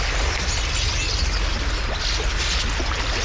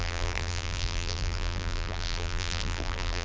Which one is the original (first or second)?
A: first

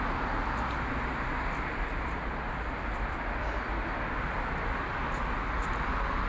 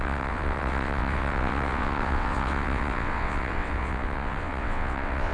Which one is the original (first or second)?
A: first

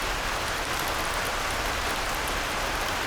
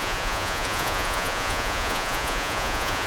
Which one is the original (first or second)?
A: first